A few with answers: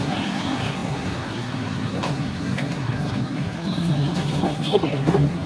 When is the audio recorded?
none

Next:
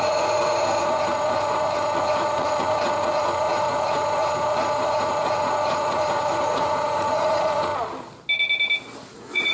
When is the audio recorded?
7.7-9.1

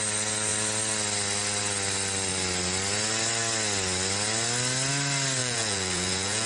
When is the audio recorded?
0.0-5.4

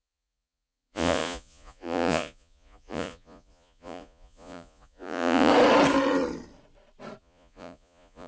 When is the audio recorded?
5.5-7.2